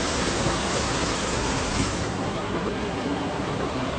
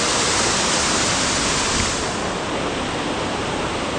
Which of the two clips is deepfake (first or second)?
first